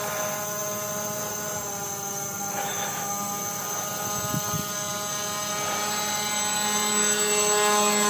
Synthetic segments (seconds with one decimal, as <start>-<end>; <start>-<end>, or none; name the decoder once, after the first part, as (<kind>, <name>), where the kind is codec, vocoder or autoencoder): none